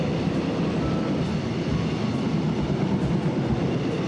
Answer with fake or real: real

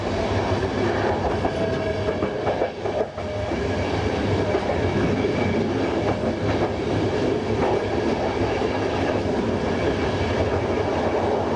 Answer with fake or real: real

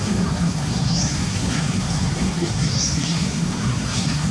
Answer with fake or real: fake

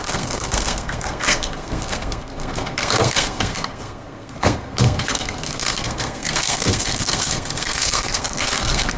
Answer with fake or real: fake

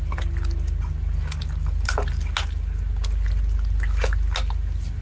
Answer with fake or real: real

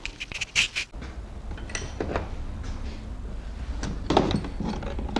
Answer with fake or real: real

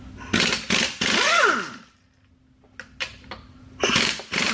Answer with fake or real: real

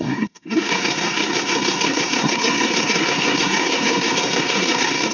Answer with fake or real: fake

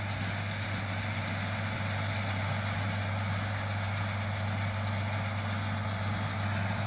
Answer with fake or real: real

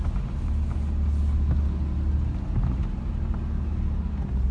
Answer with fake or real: real